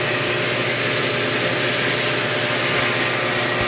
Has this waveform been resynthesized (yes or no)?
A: no